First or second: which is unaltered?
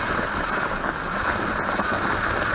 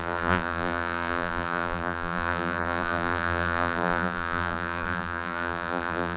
first